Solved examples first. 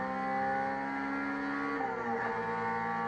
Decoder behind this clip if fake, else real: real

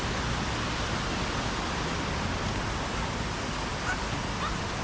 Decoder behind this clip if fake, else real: real